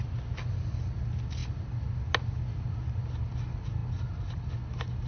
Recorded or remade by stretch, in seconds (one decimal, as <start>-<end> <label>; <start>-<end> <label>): 0.0-5.1 recorded